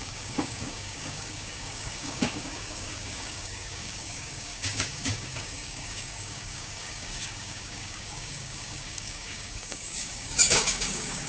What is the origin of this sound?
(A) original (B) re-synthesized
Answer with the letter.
B